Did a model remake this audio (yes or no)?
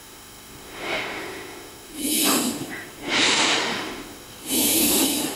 yes